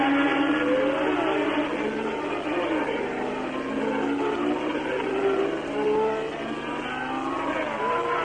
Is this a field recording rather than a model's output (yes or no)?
yes